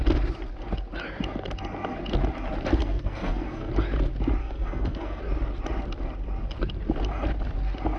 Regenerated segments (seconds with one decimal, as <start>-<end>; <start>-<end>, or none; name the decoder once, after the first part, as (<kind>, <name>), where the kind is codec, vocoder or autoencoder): 2.8-3.7 (codec, SNAC); 4.4-5.2